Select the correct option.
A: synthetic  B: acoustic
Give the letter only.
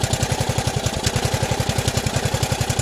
B